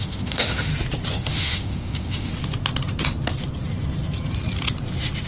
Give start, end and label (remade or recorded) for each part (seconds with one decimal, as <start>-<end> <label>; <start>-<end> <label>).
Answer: 0.0-0.7 remade; 0.7-1.2 recorded; 1.2-2.3 remade; 2.3-5.3 recorded

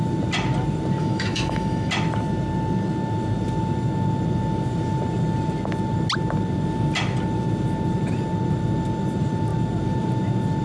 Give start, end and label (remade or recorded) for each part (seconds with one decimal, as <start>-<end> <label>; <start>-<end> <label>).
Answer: 0.0-1.0 recorded; 1.0-1.9 remade; 1.9-10.6 recorded

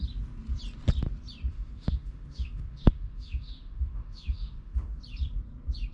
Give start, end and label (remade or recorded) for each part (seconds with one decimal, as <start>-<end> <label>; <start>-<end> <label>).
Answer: 0.0-1.5 recorded; 1.5-5.0 remade; 5.0-5.9 recorded

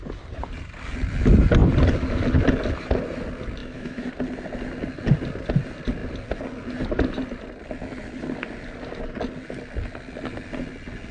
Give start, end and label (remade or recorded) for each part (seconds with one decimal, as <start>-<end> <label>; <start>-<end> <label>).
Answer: 0.0-3.6 recorded; 3.6-4.1 remade; 4.1-11.1 recorded

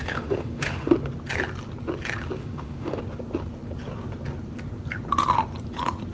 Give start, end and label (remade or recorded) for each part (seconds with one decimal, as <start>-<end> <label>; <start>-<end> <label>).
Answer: 0.0-0.9 remade; 0.9-2.4 recorded; 2.4-3.0 remade; 3.0-6.1 recorded

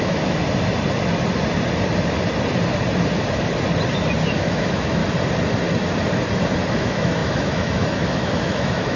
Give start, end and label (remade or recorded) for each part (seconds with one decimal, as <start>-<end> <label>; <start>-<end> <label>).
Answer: 0.0-0.4 remade; 0.4-4.4 recorded; 4.4-5.0 remade; 5.0-6.7 recorded; 6.7-9.0 remade